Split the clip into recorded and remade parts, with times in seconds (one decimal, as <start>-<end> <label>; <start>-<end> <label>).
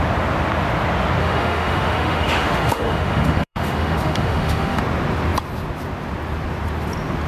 0.0-1.2 recorded; 1.2-4.8 remade; 4.8-7.3 recorded